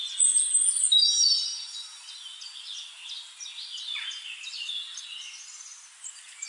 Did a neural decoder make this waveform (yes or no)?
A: no